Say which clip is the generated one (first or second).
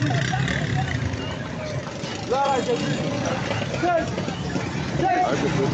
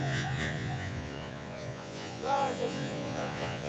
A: second